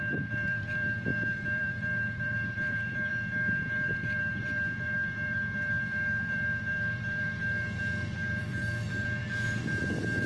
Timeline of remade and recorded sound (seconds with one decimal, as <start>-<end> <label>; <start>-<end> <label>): 0.0-10.3 remade